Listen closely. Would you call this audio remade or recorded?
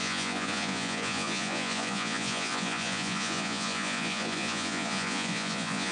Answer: remade